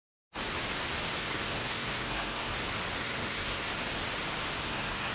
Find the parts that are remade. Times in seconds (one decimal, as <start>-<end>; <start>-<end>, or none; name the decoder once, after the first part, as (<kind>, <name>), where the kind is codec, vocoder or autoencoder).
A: 1.2-2.5 (codec, SNAC); 3.0-3.7; 4.6-5.1